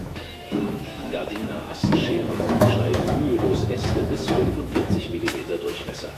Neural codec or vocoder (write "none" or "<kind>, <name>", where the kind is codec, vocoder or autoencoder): autoencoder, DAC-VAE